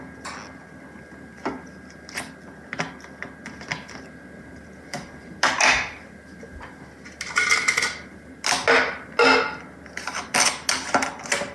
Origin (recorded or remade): recorded